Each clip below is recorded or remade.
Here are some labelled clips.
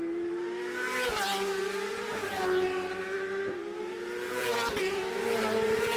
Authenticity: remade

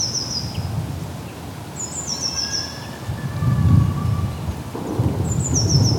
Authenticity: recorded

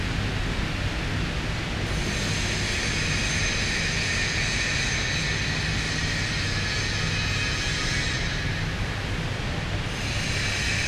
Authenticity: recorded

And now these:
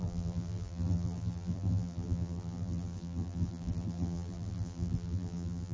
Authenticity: remade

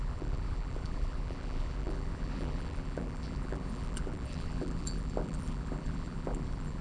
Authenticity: remade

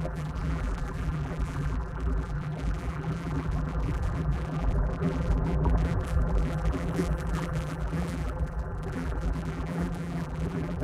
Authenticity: remade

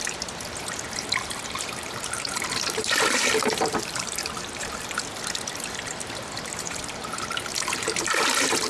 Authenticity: remade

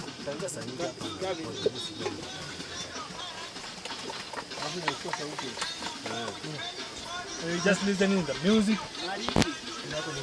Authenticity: recorded